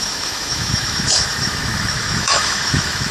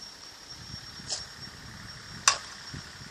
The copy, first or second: first